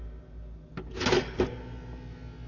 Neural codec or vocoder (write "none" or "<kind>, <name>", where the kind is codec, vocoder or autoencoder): none